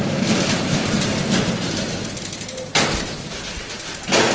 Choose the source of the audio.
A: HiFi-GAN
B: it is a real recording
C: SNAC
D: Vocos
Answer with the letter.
B